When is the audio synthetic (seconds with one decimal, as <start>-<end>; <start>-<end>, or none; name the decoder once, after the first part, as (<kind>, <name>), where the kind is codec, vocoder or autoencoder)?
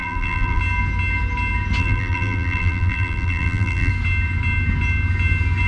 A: 0.0-0.6 (vocoder, BigVGAN v2); 1.8-3.9